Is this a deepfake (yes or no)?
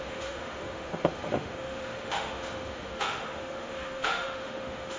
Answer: yes